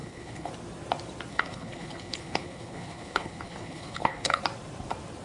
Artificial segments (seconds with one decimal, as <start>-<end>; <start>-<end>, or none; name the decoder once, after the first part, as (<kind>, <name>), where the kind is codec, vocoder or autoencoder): 0.0-0.5 (codec, HILCodec); 1.3-4.4